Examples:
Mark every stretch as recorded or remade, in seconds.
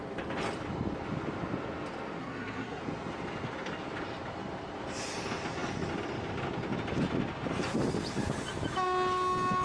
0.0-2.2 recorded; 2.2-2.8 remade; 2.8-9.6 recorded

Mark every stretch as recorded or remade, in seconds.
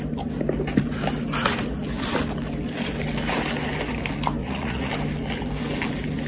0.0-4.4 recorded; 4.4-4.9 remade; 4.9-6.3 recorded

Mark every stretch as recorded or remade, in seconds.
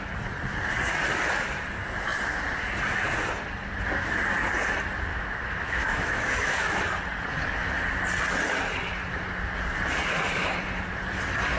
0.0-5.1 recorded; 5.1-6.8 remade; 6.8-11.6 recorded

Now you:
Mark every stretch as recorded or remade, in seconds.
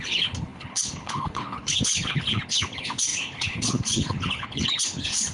0.0-5.3 remade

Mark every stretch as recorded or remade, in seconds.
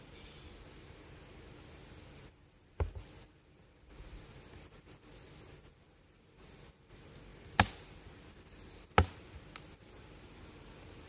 0.0-11.1 recorded